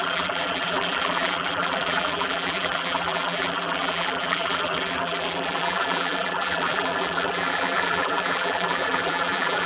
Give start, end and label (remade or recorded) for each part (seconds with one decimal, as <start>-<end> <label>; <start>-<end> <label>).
0.0-9.7 remade